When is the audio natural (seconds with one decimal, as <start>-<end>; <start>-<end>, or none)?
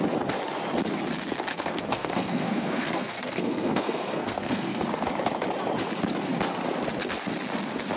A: 0.0-1.5; 4.8-8.0